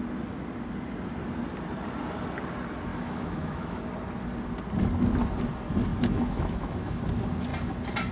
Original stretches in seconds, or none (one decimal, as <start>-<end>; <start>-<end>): 0.0-2.9; 3.8-5.9; 7.0-8.1